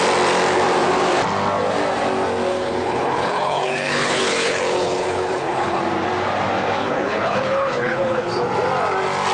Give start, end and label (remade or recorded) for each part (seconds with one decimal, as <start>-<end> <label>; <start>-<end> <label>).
0.0-2.5 recorded; 2.5-5.8 remade; 5.8-6.8 recorded; 6.8-8.3 remade; 8.3-9.3 recorded